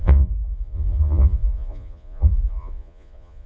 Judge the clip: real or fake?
fake